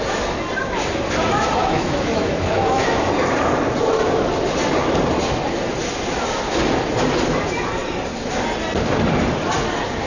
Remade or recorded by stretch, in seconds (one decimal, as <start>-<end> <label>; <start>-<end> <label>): 0.0-1.6 recorded; 1.6-3.0 remade; 3.0-10.1 recorded